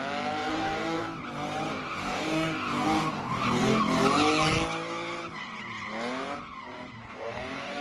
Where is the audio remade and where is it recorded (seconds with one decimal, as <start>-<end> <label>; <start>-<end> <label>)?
0.0-0.5 recorded; 0.5-1.2 remade; 1.2-1.7 recorded; 1.7-3.8 remade; 3.8-7.0 recorded; 7.0-7.8 remade